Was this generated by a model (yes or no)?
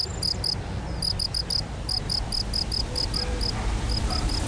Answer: no